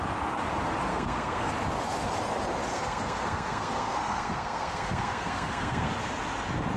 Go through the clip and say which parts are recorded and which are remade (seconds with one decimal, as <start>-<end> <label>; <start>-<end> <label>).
0.0-0.9 recorded; 0.9-1.5 remade; 1.5-2.7 recorded; 2.7-5.9 remade; 5.9-6.8 recorded